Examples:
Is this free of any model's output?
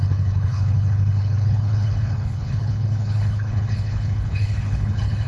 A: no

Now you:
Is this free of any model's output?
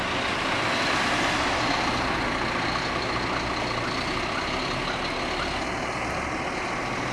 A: yes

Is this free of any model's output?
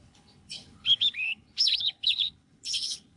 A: no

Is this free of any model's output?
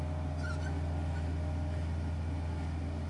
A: yes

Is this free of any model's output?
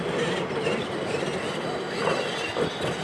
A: yes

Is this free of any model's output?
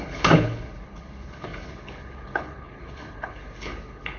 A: no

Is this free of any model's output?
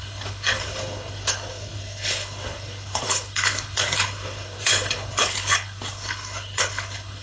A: no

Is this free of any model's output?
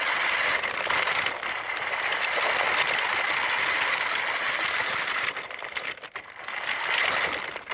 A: yes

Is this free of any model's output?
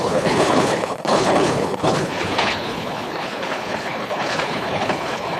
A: no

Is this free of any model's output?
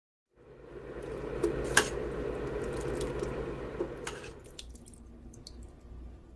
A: yes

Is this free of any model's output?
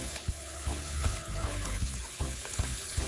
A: no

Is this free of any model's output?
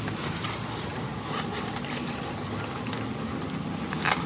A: yes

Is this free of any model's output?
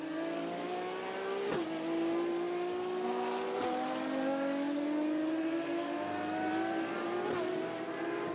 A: yes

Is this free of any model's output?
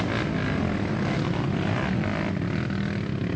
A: yes